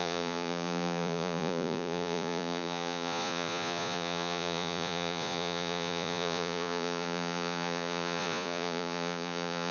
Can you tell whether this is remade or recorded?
remade